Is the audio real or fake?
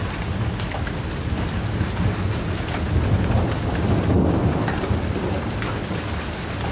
real